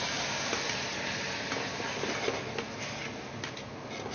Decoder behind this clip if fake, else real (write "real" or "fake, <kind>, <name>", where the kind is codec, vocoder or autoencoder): real